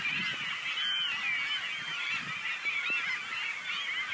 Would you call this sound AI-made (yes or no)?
no